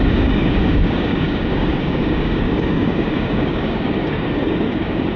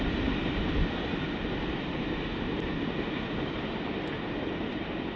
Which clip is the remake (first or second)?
first